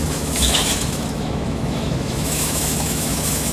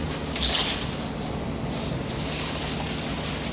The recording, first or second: second